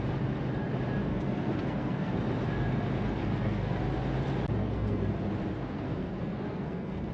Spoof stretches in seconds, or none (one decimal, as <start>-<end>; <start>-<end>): 1.1-2.1; 3.2-3.8; 4.6-5.1; 5.6-7.1

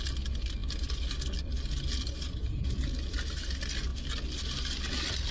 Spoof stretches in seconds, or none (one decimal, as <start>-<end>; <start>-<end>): none

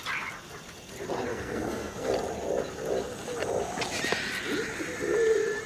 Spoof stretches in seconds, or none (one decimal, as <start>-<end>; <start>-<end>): 1.3-2.1

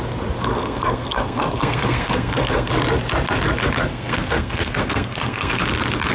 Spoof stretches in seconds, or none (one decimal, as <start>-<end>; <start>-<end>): 0.5-2.7; 3.9-5.6

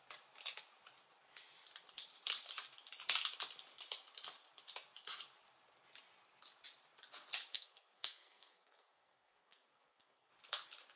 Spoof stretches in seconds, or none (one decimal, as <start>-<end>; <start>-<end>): 7.5-10.3

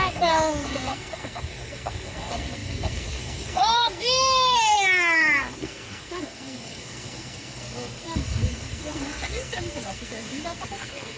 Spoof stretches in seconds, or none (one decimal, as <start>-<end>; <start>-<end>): 0.0-11.2

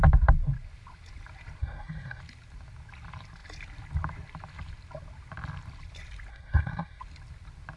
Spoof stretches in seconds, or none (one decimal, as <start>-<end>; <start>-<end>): 1.6-2.2; 6.3-7.0

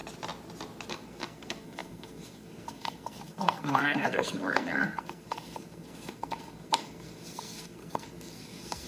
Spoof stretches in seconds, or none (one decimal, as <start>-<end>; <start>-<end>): 0.9-8.9